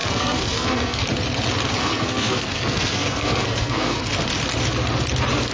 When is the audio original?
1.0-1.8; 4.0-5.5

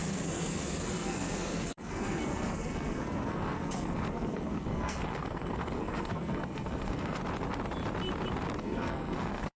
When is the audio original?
7.2-8.6